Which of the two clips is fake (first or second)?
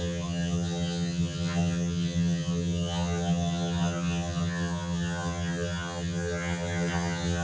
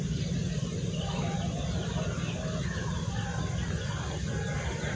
first